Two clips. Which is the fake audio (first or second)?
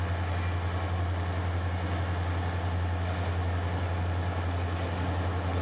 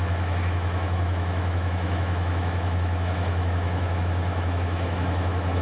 second